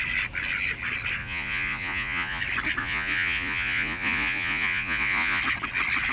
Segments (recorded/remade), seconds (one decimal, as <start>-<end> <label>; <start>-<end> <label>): 0.0-1.2 recorded; 1.2-2.4 remade; 2.4-2.8 recorded; 2.8-5.4 remade; 5.4-6.1 recorded

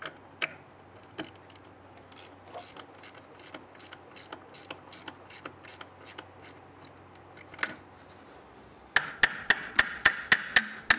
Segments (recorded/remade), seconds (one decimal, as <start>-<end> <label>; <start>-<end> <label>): 0.0-9.6 recorded; 9.6-10.2 remade; 10.2-11.0 recorded

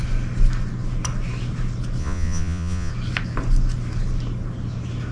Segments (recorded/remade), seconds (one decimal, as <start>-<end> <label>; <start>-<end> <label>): 0.0-2.0 recorded; 2.0-2.9 remade; 2.9-5.1 recorded

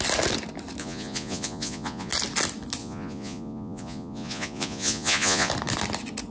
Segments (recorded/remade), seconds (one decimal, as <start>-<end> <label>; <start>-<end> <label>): 0.0-0.8 recorded; 0.8-2.1 remade; 2.1-2.8 recorded; 2.8-5.5 remade; 5.5-6.3 recorded

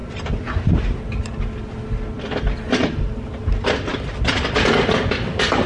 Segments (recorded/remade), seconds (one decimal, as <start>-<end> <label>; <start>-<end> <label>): 0.0-5.7 recorded

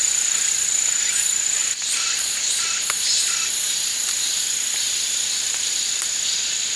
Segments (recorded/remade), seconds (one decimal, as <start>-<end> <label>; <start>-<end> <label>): 0.0-6.8 recorded

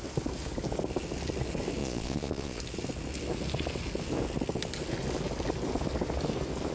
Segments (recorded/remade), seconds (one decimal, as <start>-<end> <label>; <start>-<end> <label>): 0.0-1.8 recorded; 1.8-2.6 remade; 2.6-6.7 recorded